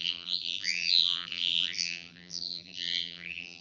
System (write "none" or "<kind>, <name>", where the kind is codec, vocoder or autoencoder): vocoder, BigVGAN v2